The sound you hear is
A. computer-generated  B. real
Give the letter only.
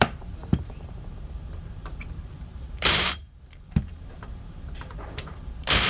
A